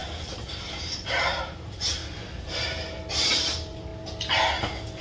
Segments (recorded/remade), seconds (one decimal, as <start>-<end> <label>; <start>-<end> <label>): 0.0-2.0 remade; 2.0-3.1 recorded; 3.1-3.9 remade; 3.9-5.0 recorded